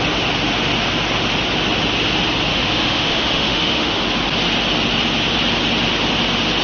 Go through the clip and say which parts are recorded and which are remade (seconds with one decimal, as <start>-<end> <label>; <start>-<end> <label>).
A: 0.0-2.5 recorded; 2.5-4.0 remade; 4.0-6.6 recorded